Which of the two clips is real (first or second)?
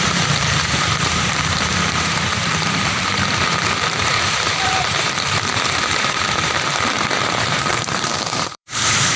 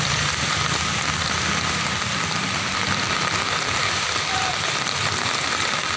second